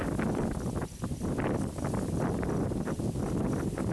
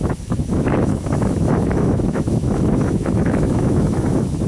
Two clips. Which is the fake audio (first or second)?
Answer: second